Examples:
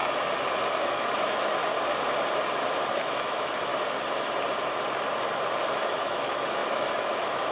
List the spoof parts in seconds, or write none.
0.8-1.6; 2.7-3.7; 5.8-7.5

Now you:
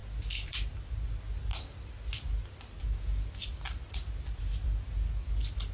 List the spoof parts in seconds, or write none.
none